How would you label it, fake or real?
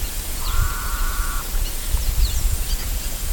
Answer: fake